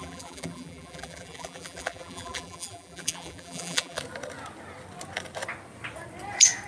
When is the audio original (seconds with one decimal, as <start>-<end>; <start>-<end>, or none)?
4.0-6.7